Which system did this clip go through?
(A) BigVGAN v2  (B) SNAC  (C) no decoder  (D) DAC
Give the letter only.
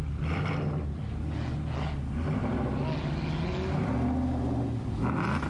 C